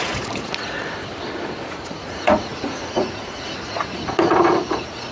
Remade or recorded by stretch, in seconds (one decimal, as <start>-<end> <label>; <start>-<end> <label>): 0.0-0.8 remade; 0.8-1.6 recorded; 1.6-5.1 remade